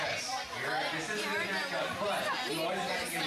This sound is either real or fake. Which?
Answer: real